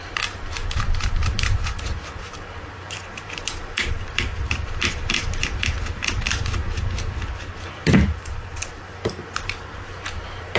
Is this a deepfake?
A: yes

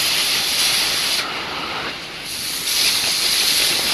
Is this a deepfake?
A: yes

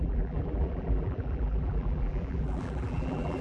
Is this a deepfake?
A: yes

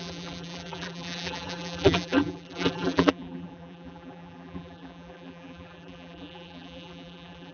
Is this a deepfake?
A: yes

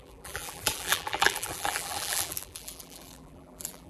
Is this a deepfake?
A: yes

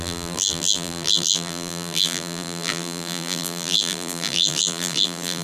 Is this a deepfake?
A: yes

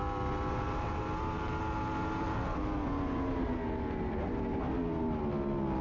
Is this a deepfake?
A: no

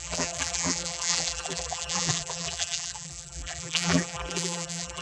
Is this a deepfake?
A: yes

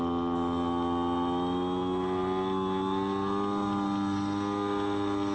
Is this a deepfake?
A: no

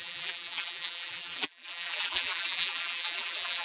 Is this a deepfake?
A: yes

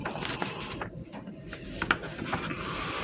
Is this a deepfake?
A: yes